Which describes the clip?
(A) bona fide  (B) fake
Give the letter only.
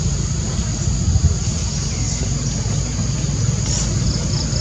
A